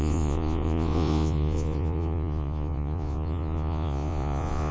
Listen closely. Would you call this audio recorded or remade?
remade